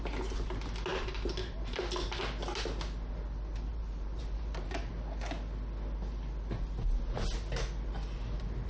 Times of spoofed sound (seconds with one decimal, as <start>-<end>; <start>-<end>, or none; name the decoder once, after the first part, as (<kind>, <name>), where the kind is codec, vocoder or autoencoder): 0.9-2.2 (vocoder, BigVGAN v2); 3.7-4.9